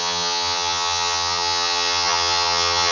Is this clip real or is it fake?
fake